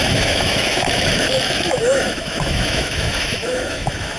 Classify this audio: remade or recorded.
remade